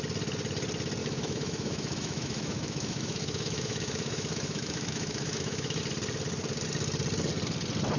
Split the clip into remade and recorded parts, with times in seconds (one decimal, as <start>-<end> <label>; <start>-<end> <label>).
0.0-1.0 recorded; 1.0-5.8 remade; 5.8-8.0 recorded